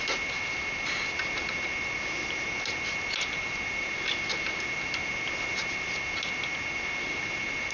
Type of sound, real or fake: real